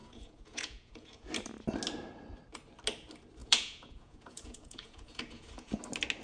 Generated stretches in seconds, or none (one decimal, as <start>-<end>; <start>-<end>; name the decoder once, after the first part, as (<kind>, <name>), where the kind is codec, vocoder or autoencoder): 0.0-1.3 (vocoder, Vocos); 3.4-5.8